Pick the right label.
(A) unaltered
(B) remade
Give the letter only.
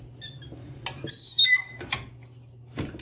A